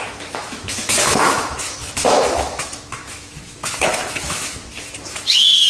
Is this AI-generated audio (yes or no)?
yes